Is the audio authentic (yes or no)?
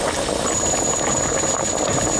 yes